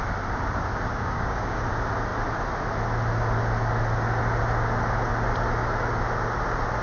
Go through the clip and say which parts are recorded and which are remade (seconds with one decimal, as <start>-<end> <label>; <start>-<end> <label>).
0.0-0.9 recorded; 0.9-1.6 remade; 1.6-6.8 recorded